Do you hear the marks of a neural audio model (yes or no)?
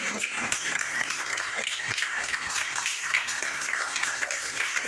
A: yes